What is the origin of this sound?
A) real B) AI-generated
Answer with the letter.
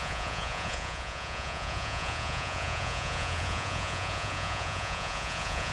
B